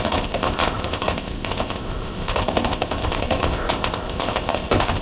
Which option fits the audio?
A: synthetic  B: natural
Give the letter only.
A